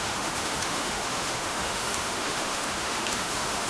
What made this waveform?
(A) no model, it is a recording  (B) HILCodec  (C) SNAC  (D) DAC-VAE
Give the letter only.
D